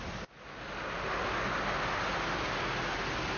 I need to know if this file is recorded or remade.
recorded